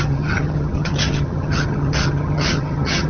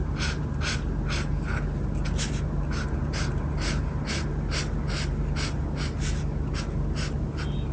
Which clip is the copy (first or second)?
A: first